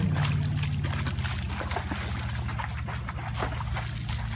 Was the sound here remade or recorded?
recorded